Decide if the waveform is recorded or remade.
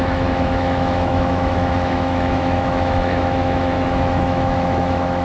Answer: remade